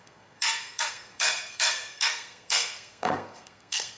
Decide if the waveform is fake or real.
fake